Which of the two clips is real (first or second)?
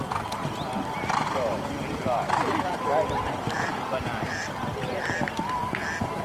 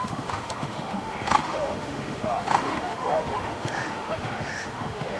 first